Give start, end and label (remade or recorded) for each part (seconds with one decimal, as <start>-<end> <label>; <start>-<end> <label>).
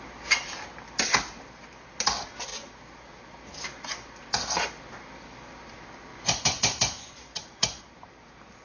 0.0-6.1 recorded; 6.1-7.8 remade; 7.8-8.6 recorded